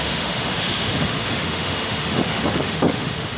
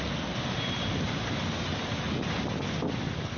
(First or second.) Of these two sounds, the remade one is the first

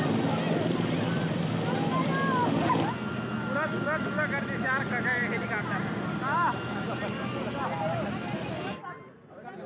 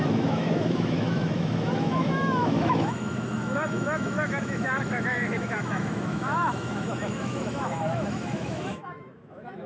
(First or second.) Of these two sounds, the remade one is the second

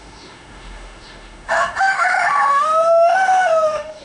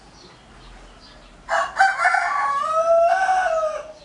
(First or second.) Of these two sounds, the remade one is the first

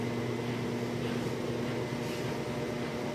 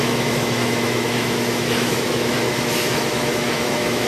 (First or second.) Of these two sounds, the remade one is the second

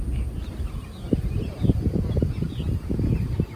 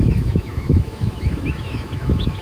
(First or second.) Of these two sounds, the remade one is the second